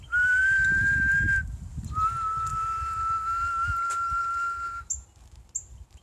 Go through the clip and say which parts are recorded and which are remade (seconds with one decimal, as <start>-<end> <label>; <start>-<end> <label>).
0.0-6.0 recorded